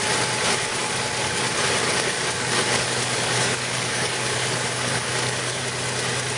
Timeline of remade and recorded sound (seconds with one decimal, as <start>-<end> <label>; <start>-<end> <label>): 0.0-0.8 recorded; 0.8-1.4 remade; 1.4-1.8 recorded; 1.8-5.6 remade; 5.6-6.4 recorded